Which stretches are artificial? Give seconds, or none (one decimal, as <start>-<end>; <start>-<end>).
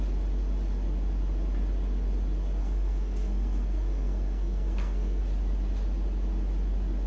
2.6-5.2